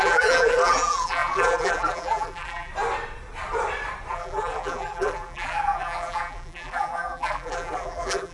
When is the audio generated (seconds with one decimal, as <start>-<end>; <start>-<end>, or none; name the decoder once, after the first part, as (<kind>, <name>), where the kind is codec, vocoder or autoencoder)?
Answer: 0.0-2.7 (vocoder, BigVGAN v2); 4.1-8.3